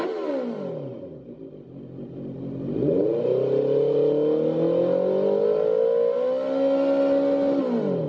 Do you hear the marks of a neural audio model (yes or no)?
no